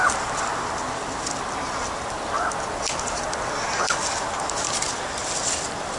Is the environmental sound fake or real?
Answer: real